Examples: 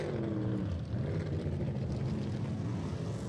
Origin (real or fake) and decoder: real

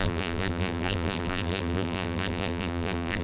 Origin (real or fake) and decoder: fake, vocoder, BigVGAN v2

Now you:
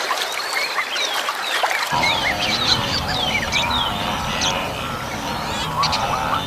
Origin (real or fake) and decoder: fake, vocoder, BigVGAN v2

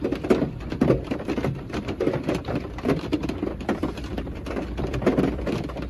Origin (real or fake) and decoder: fake, vocoder, BigVGAN v2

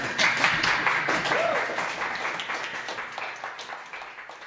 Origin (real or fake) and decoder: real